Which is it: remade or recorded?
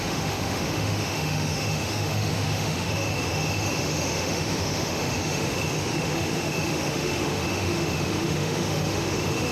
remade